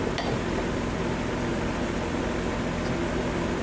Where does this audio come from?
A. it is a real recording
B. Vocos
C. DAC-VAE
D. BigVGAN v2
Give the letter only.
A